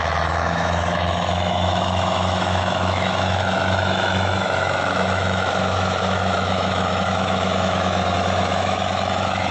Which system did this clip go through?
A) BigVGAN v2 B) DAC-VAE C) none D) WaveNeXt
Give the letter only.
B